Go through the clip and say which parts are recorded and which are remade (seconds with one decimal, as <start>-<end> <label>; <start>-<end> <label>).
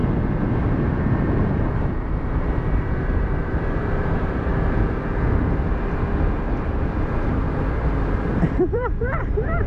0.0-0.6 recorded; 0.6-4.5 remade; 4.5-8.3 recorded; 8.3-9.7 remade